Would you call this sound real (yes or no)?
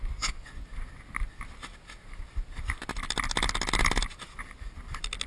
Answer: yes